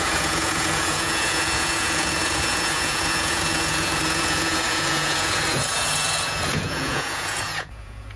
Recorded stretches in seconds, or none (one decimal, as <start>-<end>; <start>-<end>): none